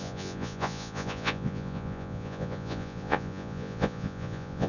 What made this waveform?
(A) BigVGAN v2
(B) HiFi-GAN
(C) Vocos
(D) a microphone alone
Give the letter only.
C